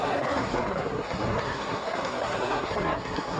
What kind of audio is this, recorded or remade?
remade